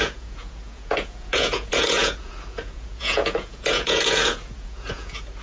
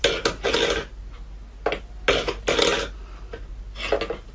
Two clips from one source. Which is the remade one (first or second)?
first